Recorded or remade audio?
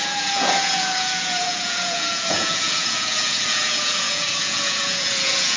remade